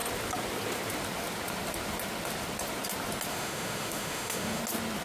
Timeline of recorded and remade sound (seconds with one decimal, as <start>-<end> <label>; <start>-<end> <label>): 0.0-3.3 recorded; 3.3-4.6 remade; 4.6-5.0 recorded